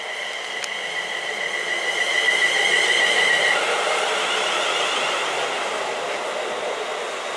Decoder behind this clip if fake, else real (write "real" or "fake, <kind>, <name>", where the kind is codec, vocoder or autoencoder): real